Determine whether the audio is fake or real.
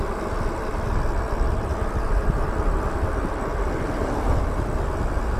real